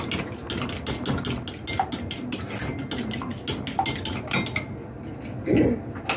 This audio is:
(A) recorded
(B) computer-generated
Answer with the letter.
A